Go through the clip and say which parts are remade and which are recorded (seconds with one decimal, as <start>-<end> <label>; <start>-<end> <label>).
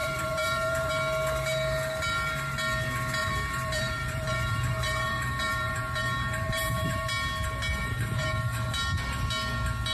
0.0-0.9 remade; 0.9-3.2 recorded; 3.2-7.1 remade; 7.1-7.8 recorded; 7.8-8.7 remade; 8.7-9.9 recorded